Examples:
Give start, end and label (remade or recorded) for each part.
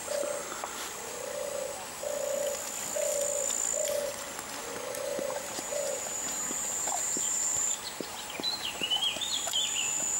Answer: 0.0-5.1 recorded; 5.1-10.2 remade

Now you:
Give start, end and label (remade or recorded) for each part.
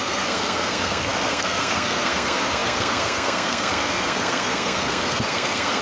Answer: 0.0-5.8 remade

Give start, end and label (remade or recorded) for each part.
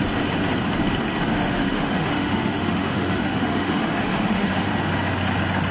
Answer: 0.0-1.3 recorded; 1.3-4.7 remade; 4.7-5.7 recorded